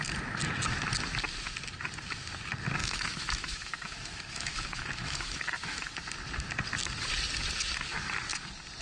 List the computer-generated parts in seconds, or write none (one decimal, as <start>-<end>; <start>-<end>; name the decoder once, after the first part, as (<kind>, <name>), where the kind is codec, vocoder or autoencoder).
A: 2.8-6.0 (autoencoder, DAC-VAE)